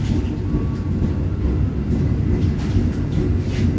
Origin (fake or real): real